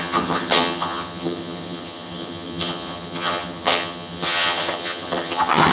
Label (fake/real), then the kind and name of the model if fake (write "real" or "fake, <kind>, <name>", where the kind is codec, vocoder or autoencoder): fake, vocoder, HiFi-GAN